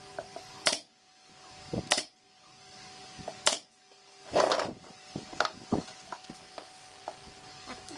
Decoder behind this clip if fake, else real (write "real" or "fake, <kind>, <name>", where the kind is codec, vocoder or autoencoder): fake, codec, DAC